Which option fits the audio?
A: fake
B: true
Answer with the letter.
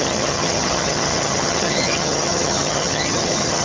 A